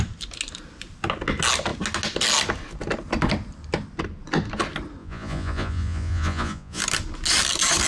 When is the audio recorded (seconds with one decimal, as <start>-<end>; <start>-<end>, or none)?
0.0-5.0; 6.8-7.9